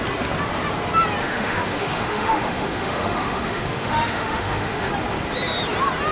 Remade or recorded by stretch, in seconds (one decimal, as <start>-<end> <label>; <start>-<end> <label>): 0.0-1.2 recorded; 1.2-4.9 remade; 4.9-6.1 recorded